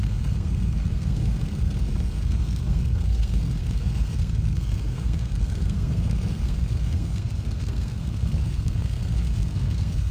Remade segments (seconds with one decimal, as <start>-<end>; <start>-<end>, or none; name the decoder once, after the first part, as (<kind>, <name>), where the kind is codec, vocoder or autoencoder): 0.0-10.1 (codec, SNAC)

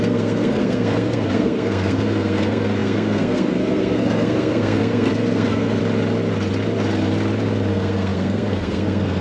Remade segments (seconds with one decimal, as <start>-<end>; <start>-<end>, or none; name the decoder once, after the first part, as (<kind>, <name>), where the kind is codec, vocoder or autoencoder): 0.0-5.8 (codec, SNAC); 7.7-9.2